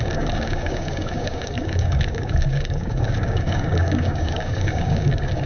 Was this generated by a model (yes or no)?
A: yes